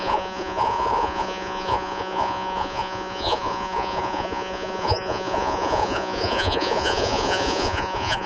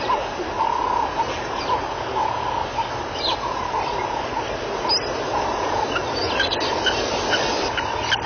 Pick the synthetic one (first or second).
first